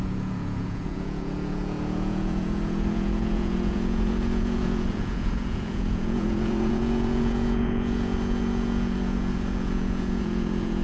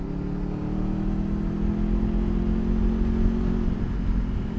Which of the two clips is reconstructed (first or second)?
first